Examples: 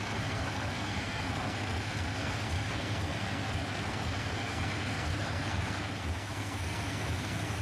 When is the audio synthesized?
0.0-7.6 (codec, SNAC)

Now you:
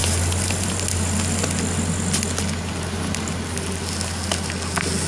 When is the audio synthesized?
none